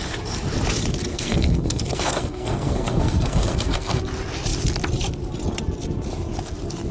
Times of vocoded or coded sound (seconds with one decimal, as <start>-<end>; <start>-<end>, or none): 1.1-4.0